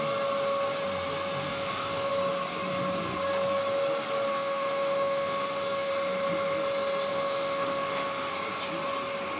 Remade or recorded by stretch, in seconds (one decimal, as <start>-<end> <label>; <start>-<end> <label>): 0.0-1.5 recorded; 1.5-2.1 remade; 2.1-4.3 recorded; 4.3-5.9 remade; 5.9-7.1 recorded; 7.1-8.3 remade; 8.3-9.4 recorded